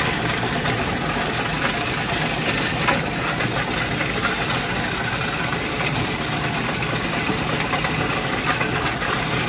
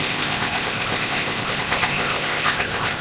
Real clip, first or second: first